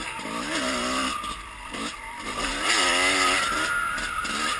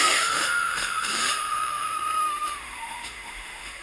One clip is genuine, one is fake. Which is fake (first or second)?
second